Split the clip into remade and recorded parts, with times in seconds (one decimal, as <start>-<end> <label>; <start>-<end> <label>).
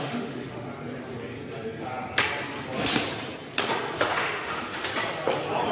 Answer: 0.0-0.7 remade; 0.7-4.1 recorded; 4.1-4.9 remade; 4.9-5.7 recorded